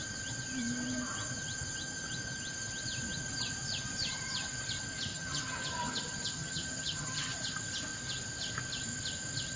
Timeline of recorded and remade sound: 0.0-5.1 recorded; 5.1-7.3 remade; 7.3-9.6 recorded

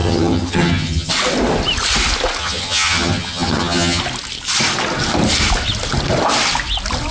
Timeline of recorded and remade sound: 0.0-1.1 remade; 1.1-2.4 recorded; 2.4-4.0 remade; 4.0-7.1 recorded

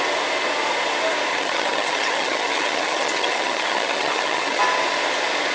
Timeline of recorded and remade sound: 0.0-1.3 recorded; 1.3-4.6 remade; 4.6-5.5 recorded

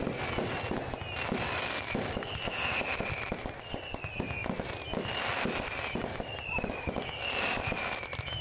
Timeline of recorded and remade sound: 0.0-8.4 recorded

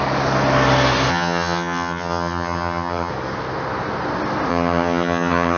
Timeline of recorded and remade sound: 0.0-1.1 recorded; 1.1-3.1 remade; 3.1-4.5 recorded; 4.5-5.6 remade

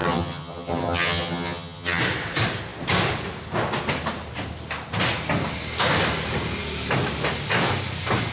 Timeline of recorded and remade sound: 0.0-2.0 remade; 2.0-8.3 recorded